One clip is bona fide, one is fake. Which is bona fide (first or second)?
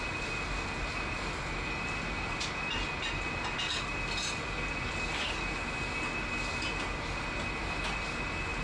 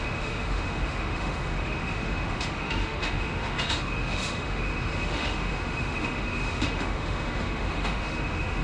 first